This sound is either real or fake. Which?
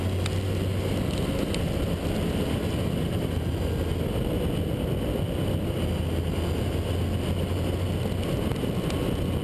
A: real